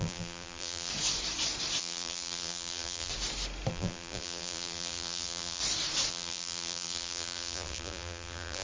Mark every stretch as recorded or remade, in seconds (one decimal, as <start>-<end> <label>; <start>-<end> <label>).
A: 0.0-0.9 remade; 0.9-1.8 recorded; 1.8-3.1 remade; 3.1-3.7 recorded; 3.7-5.6 remade; 5.6-6.1 recorded; 6.1-8.6 remade